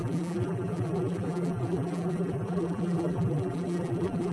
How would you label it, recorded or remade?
remade